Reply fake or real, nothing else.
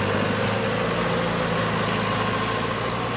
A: real